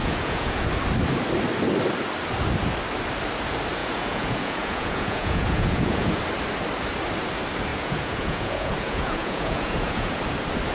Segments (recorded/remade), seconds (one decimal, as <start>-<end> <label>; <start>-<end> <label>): 0.0-0.6 remade; 0.6-3.8 recorded; 3.8-6.2 remade; 6.2-7.7 recorded; 7.7-10.2 remade; 10.2-10.7 recorded